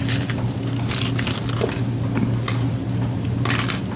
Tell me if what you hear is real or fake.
real